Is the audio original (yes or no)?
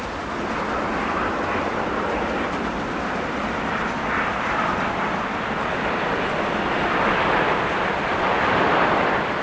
no